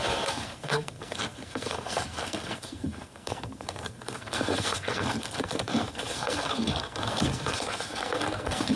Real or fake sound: fake